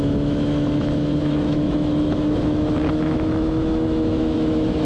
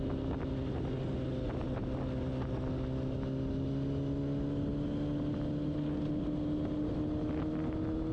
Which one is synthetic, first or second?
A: first